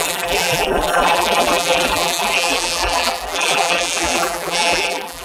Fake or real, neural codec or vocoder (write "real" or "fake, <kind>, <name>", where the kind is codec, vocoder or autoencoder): fake, vocoder, BigVGAN v2